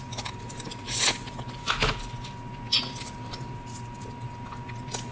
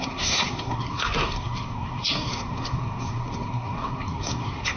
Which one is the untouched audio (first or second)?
first